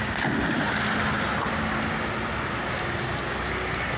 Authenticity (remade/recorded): recorded